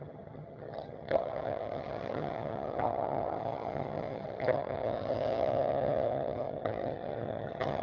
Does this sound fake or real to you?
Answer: fake